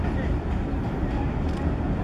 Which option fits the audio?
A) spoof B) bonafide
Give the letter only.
B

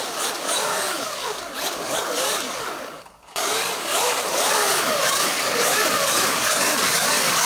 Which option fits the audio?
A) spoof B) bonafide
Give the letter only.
A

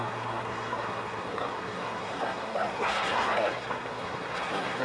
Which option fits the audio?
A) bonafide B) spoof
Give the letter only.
B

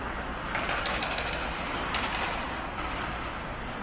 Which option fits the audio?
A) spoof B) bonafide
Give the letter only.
B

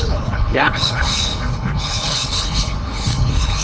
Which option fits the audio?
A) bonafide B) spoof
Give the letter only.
B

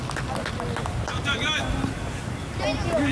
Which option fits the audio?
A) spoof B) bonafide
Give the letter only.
B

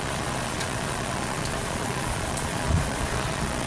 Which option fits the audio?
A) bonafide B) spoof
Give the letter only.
B